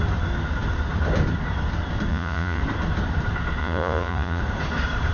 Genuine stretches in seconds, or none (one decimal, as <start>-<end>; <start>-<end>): 0.0-2.1; 2.6-3.6; 4.4-5.1